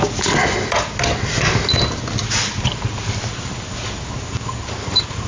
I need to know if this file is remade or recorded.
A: recorded